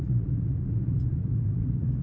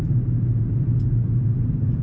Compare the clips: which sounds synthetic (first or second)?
first